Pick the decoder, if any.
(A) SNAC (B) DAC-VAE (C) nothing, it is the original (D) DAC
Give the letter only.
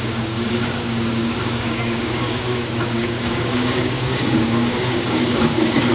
D